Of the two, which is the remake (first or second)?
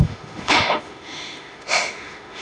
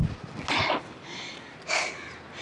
first